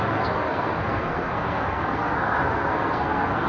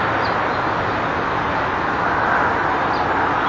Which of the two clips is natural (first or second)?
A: second